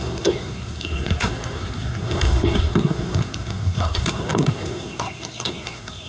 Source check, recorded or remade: remade